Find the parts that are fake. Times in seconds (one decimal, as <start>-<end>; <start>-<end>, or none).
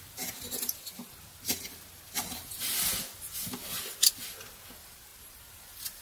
none